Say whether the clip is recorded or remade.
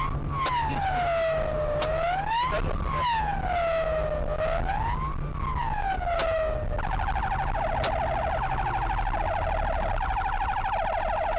recorded